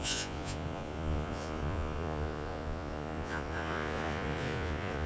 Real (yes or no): no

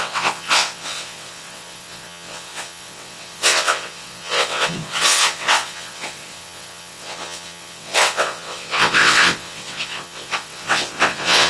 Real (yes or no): no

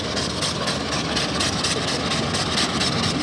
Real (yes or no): yes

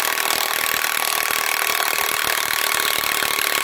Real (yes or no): yes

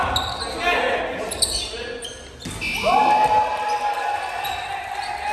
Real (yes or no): yes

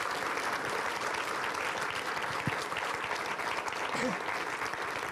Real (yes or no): yes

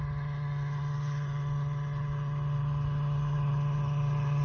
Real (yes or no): yes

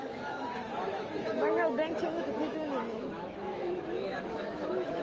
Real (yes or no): no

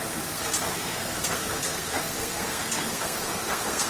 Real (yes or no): no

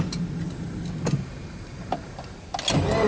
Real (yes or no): yes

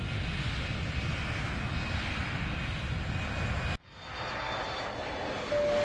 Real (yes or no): yes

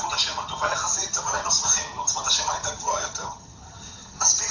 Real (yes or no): no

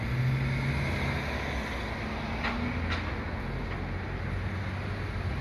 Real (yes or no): yes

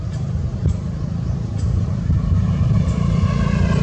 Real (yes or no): no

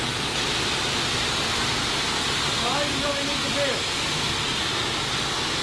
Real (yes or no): yes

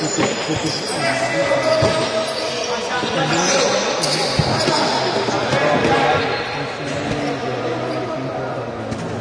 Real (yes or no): yes